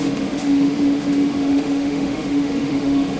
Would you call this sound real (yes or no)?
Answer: no